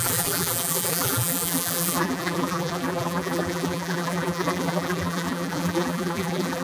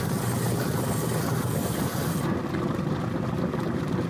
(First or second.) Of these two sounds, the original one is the second